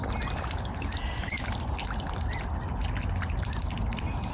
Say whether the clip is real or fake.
real